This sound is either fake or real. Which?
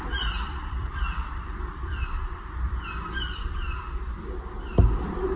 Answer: fake